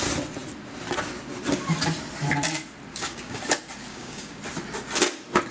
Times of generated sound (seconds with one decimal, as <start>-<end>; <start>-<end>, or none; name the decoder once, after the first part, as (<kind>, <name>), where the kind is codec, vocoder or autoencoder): 2.9-3.4 (codec, DAC); 3.9-4.4